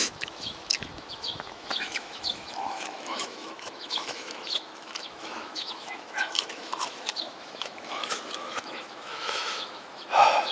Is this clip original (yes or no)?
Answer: no